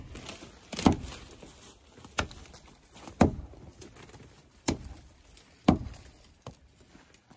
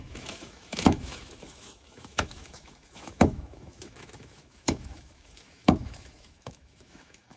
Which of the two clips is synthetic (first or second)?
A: second